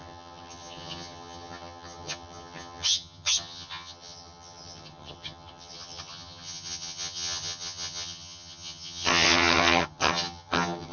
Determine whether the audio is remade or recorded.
remade